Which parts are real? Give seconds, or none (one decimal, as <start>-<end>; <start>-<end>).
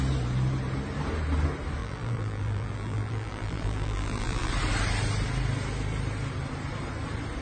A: 0.0-1.8; 4.5-7.4